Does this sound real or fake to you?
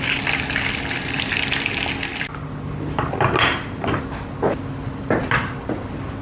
real